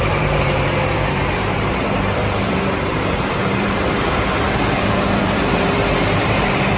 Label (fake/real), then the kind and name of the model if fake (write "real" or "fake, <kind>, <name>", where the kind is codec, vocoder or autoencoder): fake, vocoder, BigVGAN v2